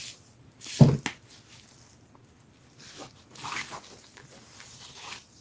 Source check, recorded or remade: recorded